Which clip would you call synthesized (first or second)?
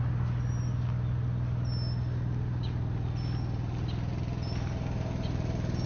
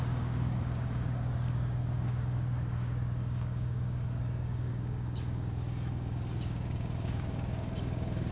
second